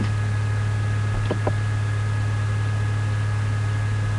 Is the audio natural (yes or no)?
yes